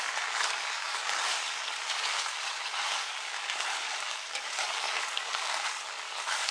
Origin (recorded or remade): remade